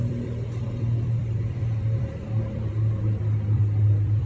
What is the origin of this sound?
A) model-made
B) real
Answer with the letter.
A